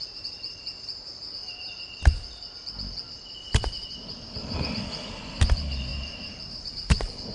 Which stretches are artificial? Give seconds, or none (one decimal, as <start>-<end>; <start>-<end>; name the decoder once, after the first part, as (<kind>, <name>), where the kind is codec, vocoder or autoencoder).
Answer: 5.9-7.3 (vocoder, BigVGAN v2)